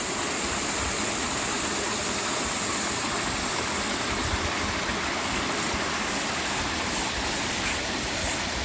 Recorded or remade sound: recorded